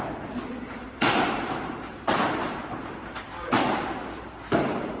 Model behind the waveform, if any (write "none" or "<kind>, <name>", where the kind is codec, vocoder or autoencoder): vocoder, BigVGAN v2